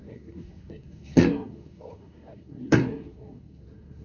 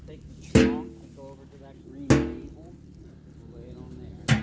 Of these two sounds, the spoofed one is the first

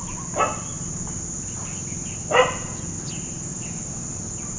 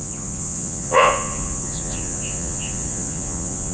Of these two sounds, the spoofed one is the second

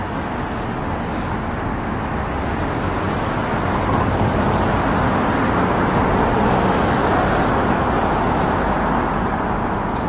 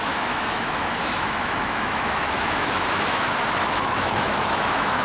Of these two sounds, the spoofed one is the second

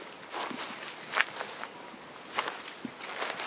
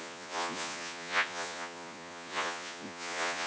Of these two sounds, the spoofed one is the second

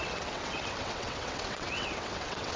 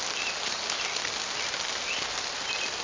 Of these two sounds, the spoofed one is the first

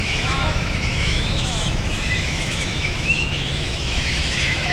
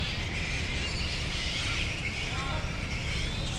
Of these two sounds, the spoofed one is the first